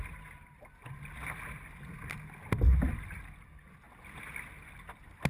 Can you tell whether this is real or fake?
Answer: real